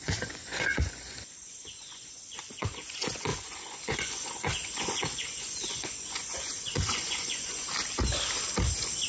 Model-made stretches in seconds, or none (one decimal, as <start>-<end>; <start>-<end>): 0.0-7.7

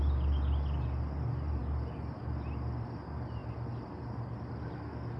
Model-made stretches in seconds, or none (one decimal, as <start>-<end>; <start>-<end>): none

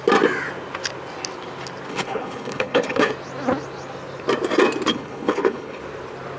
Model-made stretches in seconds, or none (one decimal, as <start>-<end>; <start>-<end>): 1.9-3.1; 4.9-5.8

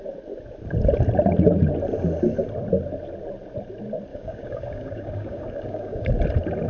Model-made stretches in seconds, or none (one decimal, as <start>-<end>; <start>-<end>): 4.1-6.1

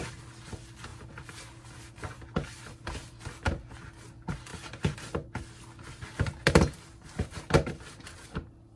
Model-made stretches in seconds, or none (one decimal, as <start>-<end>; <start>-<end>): none

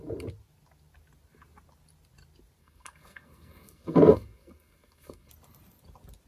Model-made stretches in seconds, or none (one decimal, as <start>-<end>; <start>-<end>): 2.6-5.3

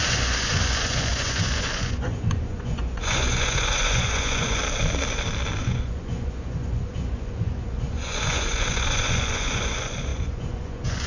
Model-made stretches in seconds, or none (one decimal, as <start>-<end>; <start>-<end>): 0.0-4.6; 5.6-11.1